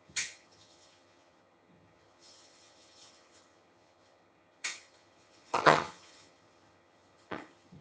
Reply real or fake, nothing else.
fake